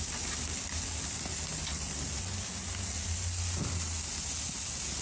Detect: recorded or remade recorded